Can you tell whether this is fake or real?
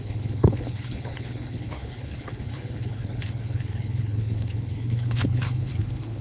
fake